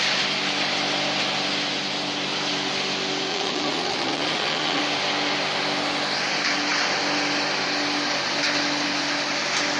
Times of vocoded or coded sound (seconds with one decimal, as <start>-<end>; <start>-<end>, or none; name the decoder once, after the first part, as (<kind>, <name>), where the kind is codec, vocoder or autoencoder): 3.3-4.8 (vocoder, Vocos)